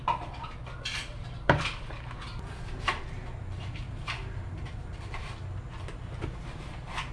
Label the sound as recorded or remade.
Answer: remade